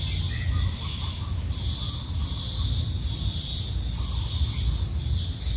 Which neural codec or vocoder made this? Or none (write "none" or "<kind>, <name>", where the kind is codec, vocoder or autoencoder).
none